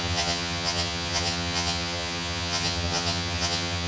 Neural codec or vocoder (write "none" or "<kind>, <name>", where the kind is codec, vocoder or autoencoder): vocoder, HiFi-GAN